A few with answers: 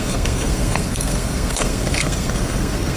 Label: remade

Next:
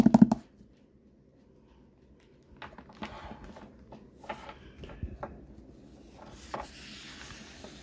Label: recorded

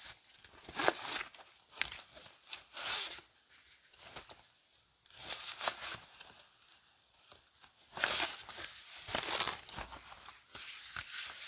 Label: recorded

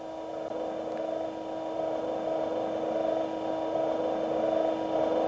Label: recorded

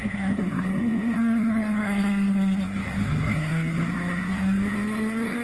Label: remade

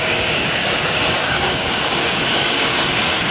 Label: remade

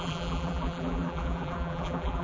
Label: remade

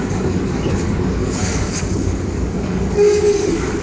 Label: remade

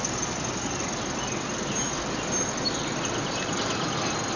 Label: recorded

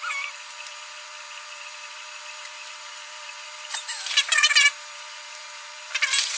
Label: remade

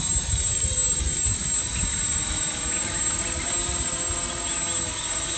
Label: recorded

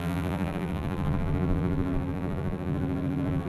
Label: remade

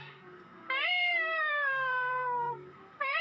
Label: remade